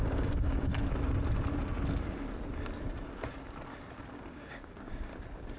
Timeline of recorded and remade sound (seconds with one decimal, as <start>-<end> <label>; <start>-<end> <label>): 0.0-0.7 remade; 0.7-4.1 recorded; 4.1-5.1 remade; 5.1-5.6 recorded